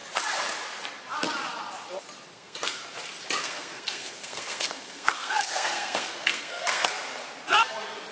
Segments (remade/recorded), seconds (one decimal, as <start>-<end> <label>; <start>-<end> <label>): 0.0-2.3 recorded; 2.3-2.8 remade; 2.8-3.4 recorded; 3.4-6.9 remade; 6.9-8.1 recorded